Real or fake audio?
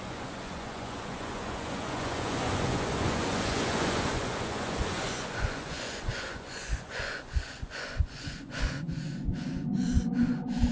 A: fake